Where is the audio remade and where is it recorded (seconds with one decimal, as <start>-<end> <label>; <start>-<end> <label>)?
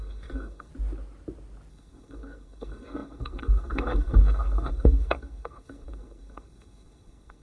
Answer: 0.0-0.7 remade; 0.7-1.7 recorded; 1.7-7.4 remade